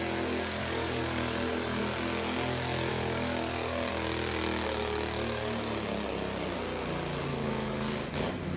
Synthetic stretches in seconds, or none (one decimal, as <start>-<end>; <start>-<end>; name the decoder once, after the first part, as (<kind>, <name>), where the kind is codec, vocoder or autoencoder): 0.6-1.8 (codec, DAC); 2.9-3.9; 7.3-8.1